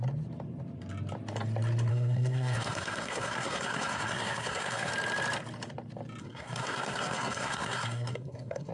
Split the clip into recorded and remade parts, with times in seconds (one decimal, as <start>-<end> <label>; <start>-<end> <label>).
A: 0.0-1.9 recorded; 1.9-4.9 remade; 4.9-6.2 recorded; 6.2-8.7 remade